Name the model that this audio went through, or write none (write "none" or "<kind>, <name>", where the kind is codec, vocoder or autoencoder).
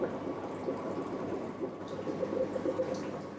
none